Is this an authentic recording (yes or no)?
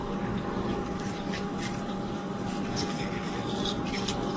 no